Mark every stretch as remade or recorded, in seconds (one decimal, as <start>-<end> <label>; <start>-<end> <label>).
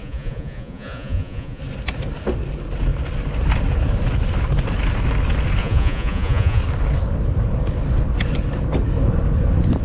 0.0-1.6 remade; 1.6-5.6 recorded; 5.6-6.6 remade; 6.6-9.8 recorded